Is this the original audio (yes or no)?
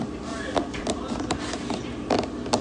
yes